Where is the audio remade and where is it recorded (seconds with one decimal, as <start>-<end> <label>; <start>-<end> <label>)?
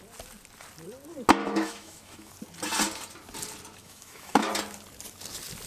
0.0-1.4 recorded; 1.4-2.3 remade; 2.3-3.8 recorded; 3.8-4.5 remade; 4.5-5.7 recorded